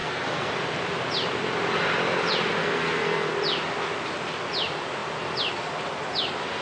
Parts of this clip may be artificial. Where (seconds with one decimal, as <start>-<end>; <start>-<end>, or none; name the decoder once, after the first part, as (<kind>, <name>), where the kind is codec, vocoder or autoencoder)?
0.0-0.5 (codec, SNAC); 2.6-3.3